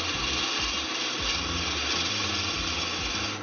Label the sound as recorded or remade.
recorded